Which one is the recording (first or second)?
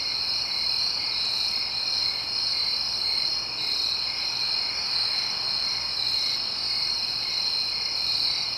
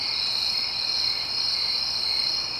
first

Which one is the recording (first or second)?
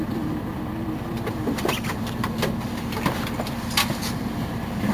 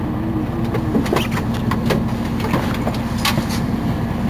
second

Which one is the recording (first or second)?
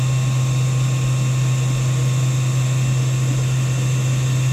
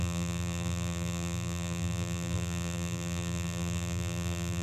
first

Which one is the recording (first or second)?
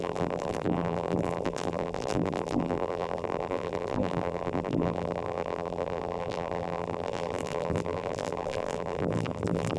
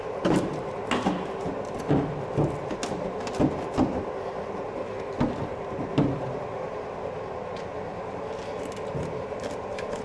second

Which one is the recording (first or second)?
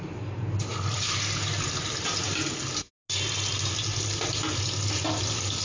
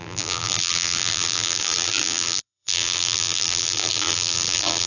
first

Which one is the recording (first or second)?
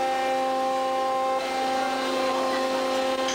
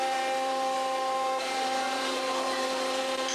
first